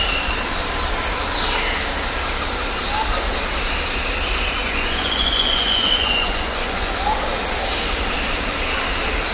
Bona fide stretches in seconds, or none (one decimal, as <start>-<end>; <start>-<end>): 0.0-4.6; 6.9-9.3